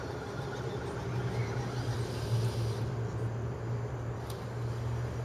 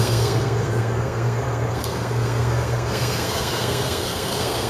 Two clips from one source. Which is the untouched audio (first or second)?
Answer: first